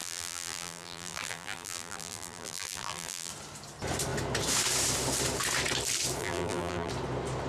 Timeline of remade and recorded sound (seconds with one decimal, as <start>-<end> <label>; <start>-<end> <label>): 0.0-3.3 remade; 3.3-6.2 recorded; 6.2-6.9 remade; 6.9-7.5 recorded